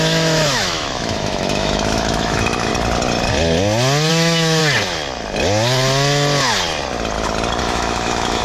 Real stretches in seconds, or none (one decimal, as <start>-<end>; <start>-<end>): 2.7-4.1; 4.6-7.6